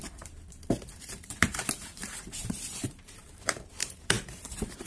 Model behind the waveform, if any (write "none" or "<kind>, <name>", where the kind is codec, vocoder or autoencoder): vocoder, BigVGAN v2